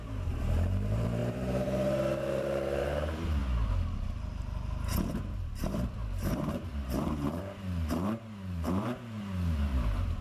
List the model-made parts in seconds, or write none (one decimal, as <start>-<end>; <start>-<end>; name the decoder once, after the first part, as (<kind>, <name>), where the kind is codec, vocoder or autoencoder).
0.0-3.4 (vocoder, BigVGAN v2); 5.1-10.2